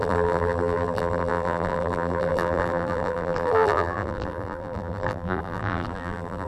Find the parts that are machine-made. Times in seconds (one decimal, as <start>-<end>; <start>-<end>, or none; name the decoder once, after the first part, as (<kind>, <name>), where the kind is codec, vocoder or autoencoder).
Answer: 0.0-6.5 (vocoder, BigVGAN v2)